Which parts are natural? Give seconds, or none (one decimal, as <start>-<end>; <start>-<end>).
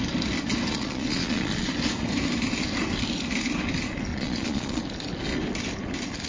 0.0-0.7; 1.7-4.1; 4.8-6.3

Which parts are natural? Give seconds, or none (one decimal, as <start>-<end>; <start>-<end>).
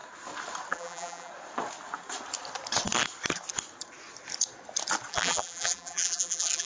0.0-0.7; 1.3-5.1